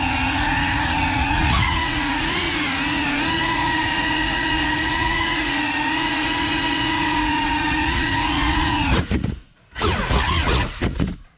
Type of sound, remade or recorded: remade